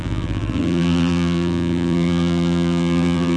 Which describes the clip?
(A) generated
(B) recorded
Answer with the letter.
A